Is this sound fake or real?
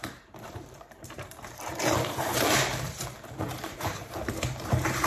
fake